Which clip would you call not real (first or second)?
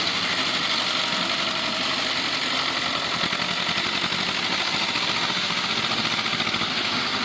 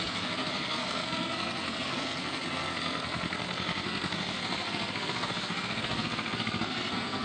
second